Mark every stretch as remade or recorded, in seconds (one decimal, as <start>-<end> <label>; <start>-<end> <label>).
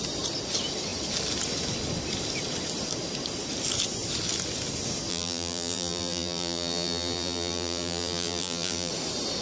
0.0-5.1 recorded; 5.1-8.9 remade; 8.9-9.4 recorded